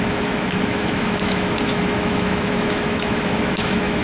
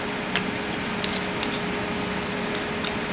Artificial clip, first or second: first